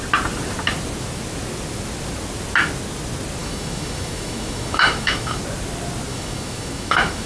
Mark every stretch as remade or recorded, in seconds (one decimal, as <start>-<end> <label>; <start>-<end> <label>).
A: 0.0-3.4 recorded; 3.4-5.4 remade; 5.4-6.1 recorded; 6.1-7.3 remade